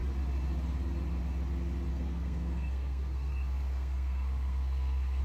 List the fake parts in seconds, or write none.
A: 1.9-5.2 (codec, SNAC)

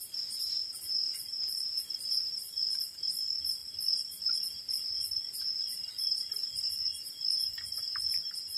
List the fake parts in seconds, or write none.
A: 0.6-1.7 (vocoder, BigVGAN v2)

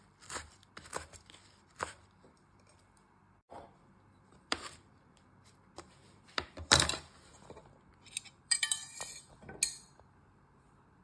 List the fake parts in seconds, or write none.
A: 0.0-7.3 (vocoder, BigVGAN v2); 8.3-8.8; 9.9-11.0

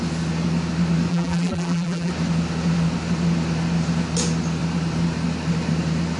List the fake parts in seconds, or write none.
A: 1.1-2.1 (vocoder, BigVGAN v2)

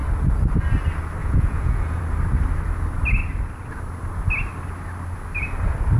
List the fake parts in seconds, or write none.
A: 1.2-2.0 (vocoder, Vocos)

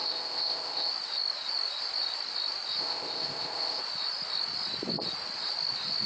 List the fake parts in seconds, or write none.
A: 0.0-0.9 (codec, ZipCodec); 2.8-3.8